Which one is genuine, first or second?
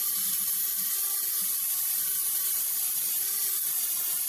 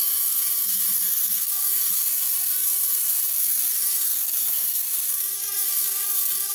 first